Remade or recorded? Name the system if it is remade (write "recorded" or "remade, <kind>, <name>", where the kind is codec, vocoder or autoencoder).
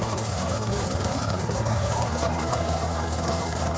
remade, codec, SNAC